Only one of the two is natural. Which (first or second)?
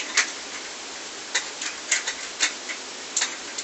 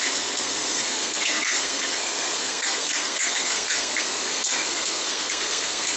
first